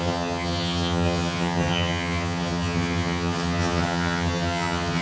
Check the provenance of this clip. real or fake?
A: fake